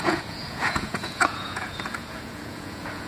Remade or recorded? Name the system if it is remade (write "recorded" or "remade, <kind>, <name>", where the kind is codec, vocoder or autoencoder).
remade, vocoder, Vocos